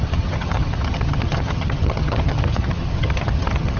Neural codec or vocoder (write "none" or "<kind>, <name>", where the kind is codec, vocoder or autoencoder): vocoder, HiFi-GAN